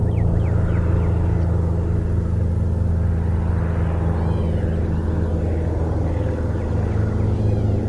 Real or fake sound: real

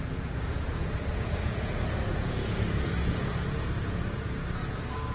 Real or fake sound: fake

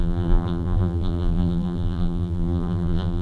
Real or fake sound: fake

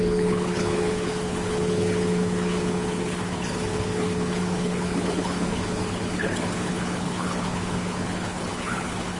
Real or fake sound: fake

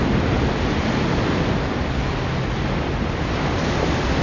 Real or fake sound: real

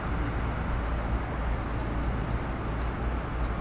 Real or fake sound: real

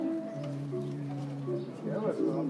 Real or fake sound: fake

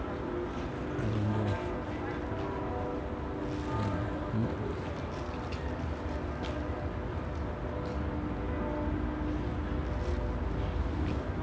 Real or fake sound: real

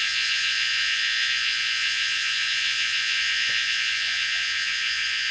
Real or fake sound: fake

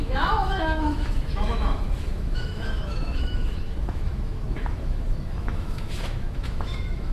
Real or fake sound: fake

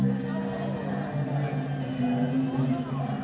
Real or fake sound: real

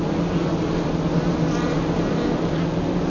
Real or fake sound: real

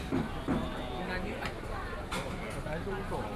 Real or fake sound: real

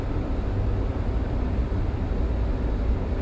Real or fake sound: real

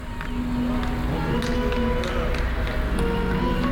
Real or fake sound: real